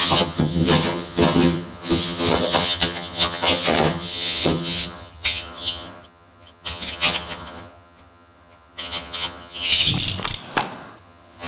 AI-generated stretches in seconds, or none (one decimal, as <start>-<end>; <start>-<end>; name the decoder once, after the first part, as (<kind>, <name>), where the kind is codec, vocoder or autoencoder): 0.0-9.9 (vocoder, HiFi-GAN); 11.0-11.5